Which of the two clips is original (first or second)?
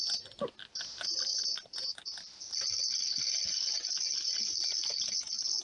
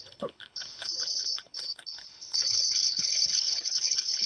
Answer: first